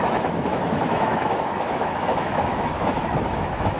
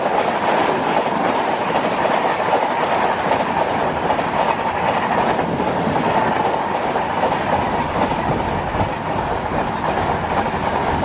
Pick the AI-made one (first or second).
first